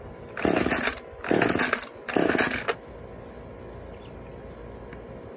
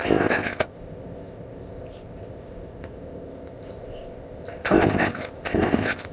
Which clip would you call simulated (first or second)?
second